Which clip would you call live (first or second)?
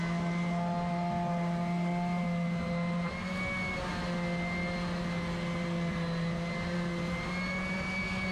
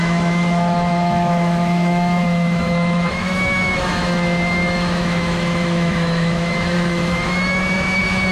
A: first